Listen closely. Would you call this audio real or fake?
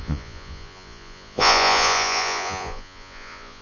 fake